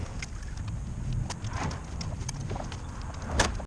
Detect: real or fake real